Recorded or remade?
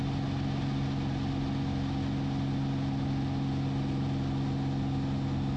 recorded